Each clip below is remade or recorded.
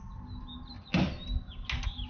recorded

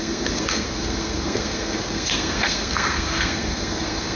remade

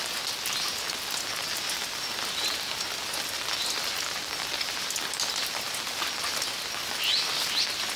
recorded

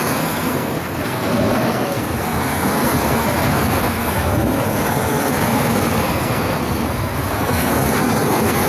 remade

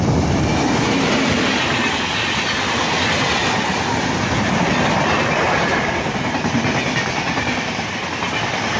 recorded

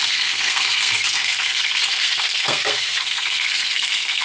remade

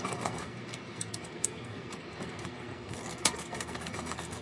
remade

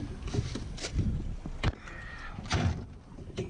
recorded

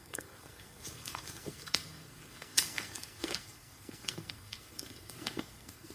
remade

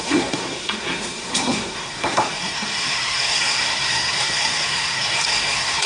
remade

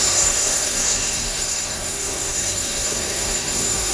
remade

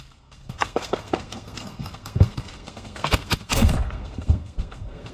remade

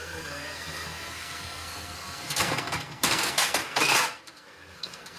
remade